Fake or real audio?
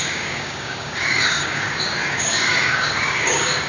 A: fake